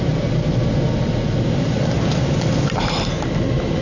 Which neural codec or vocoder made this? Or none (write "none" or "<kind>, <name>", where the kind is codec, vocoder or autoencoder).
none